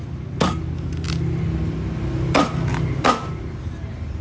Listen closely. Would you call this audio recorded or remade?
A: recorded